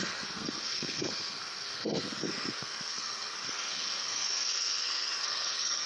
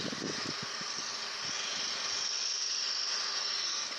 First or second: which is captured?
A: second